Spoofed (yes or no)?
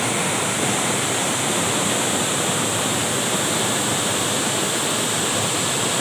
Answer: no